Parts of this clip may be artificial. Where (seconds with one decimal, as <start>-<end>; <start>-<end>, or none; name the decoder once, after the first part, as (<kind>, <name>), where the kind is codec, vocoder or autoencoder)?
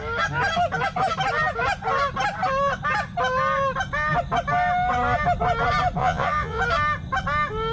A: 6.0-6.6 (vocoder, Vocos)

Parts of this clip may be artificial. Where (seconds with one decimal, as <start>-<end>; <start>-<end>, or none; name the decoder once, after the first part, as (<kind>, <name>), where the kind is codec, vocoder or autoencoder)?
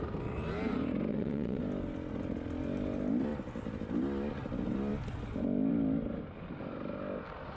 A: 1.1-1.6 (vocoder, WaveNeXt)